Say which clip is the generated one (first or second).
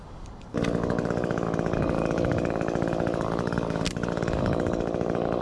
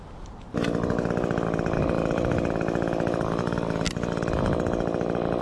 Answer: first